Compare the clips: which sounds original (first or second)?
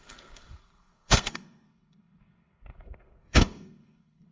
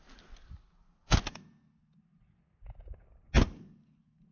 second